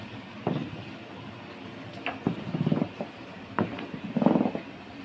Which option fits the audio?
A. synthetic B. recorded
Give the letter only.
B